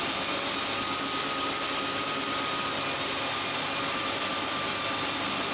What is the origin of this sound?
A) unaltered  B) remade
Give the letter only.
A